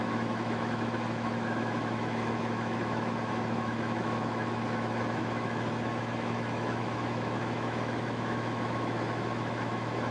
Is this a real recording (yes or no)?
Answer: no